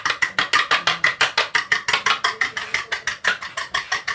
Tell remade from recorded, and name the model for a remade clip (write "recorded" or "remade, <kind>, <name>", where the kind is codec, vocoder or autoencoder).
recorded